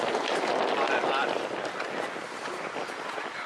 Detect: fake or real real